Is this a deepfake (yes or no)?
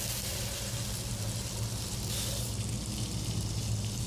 no